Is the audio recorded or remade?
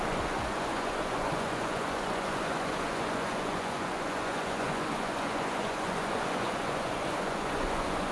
remade